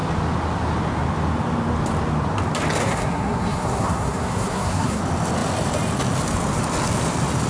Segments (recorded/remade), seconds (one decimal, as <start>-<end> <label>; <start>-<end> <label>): 0.0-2.8 recorded; 2.8-5.0 remade; 5.0-7.5 recorded

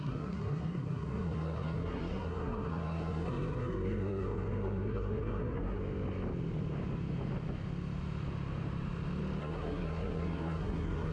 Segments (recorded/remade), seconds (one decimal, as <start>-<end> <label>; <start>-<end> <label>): 0.0-5.8 remade; 5.8-9.4 recorded; 9.4-11.1 remade

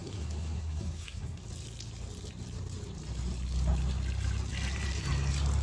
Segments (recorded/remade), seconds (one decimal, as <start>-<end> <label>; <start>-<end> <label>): 0.0-1.4 remade; 1.4-5.6 recorded

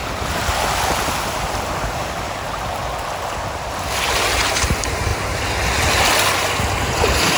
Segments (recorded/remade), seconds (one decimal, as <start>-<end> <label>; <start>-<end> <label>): 0.0-7.4 recorded

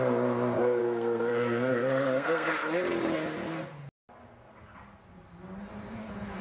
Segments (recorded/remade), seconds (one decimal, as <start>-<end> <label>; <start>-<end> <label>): 0.0-0.8 recorded; 0.8-2.5 remade; 2.5-6.4 recorded